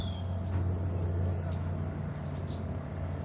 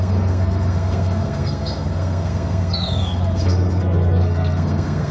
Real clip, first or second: first